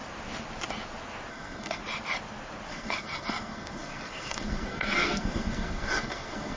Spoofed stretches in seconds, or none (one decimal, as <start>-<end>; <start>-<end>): 1.3-1.8; 2.7-6.6

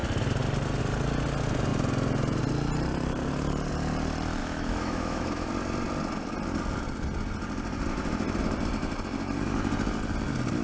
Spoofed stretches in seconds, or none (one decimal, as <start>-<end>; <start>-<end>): 4.4-5.5

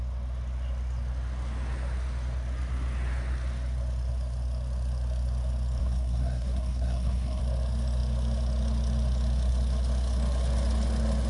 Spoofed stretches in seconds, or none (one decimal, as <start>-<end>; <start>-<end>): 5.8-7.4

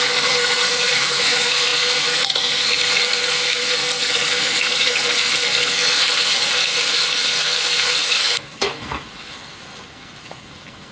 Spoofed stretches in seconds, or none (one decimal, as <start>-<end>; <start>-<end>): 0.0-10.9